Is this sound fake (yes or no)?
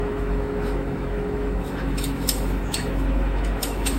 yes